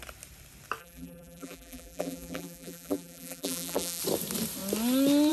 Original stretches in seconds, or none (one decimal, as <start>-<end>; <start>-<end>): 0.0-0.8; 4.0-5.3